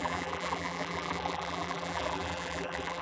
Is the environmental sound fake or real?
fake